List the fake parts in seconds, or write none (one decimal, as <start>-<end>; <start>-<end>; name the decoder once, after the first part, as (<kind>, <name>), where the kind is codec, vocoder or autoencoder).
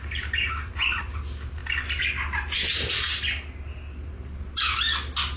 0.6-1.2 (vocoder, Vocos)